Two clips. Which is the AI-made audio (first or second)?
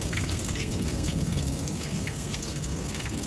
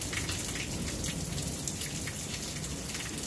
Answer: first